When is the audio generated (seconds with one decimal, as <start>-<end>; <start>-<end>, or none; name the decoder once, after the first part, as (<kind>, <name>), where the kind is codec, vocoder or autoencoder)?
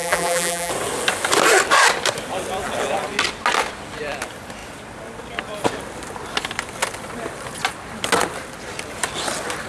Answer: 0.0-0.7 (vocoder, BigVGAN v2)